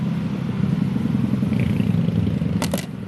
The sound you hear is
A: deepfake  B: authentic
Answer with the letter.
B